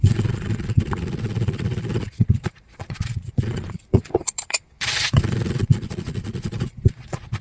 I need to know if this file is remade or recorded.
remade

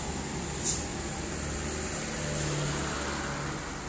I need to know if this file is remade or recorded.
recorded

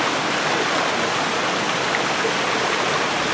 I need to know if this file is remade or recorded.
recorded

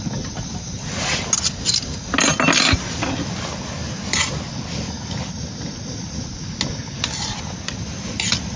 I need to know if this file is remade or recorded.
recorded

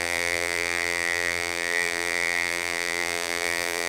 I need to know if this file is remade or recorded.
remade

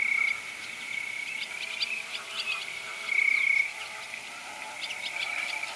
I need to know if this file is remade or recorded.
recorded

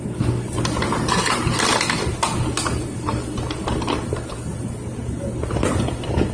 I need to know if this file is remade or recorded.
recorded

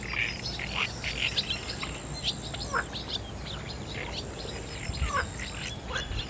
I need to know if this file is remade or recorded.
recorded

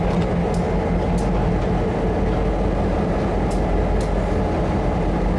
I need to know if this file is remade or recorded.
recorded